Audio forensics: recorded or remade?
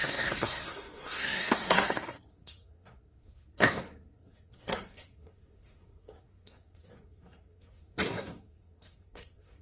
remade